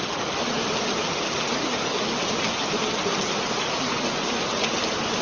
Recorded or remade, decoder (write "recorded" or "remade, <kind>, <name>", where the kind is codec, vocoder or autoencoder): recorded